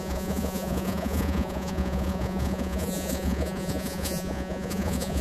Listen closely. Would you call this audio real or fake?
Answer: fake